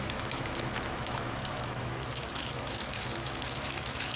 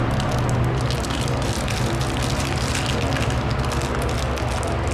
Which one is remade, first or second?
first